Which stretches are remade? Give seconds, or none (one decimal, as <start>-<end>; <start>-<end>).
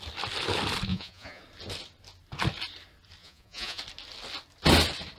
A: 0.9-1.4; 3.2-3.8